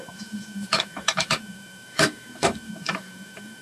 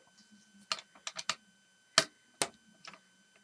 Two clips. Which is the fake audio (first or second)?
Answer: first